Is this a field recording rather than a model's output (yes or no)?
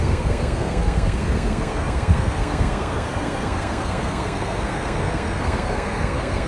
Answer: no